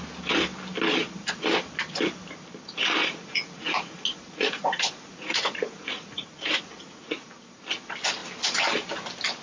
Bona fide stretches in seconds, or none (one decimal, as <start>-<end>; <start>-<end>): 0.0-3.0; 7.3-9.4